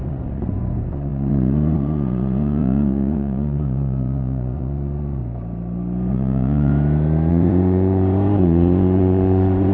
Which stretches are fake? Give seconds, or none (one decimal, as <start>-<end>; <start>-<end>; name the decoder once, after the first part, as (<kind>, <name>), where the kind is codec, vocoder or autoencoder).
0.0-5.2 (vocoder, Vocos); 6.1-6.7; 7.3-9.7